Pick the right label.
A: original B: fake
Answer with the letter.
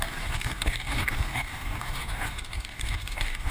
B